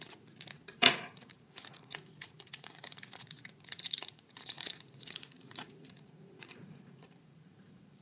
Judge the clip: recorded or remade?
remade